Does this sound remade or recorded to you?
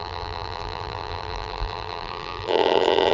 remade